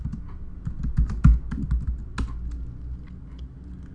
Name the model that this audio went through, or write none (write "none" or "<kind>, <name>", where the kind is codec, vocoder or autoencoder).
none